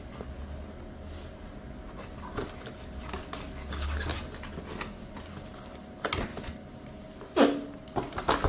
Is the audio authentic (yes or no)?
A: yes